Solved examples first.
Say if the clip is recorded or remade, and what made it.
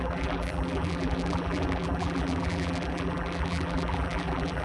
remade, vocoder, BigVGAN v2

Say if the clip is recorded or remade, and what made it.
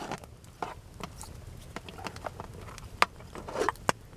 recorded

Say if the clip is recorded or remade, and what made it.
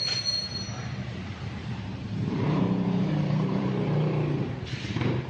remade, vocoder, BigVGAN v2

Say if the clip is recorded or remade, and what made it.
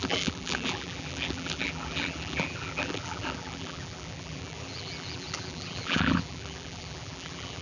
remade, vocoder, BigVGAN v2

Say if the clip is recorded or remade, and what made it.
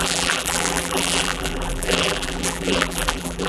remade, vocoder, BigVGAN v2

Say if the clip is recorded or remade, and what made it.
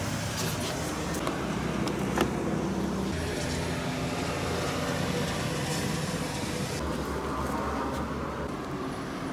recorded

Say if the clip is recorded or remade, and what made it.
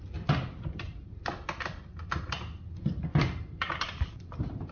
remade, vocoder, BigVGAN v2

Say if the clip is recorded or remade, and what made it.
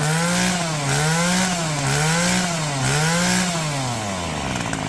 recorded